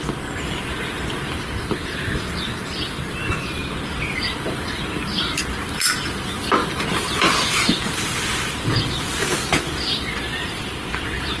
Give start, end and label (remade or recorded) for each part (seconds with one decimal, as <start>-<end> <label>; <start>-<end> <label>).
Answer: 0.0-3.6 remade; 3.6-4.1 recorded; 4.1-11.4 remade